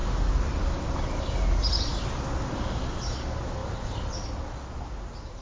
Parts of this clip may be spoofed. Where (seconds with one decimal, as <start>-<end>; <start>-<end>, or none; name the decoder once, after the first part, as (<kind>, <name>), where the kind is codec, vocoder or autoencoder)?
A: none